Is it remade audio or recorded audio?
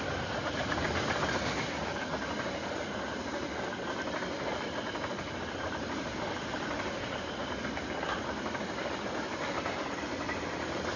recorded